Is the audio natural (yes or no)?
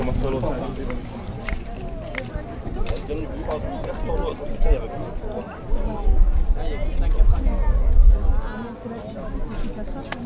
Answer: yes